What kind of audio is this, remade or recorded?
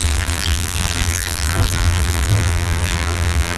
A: remade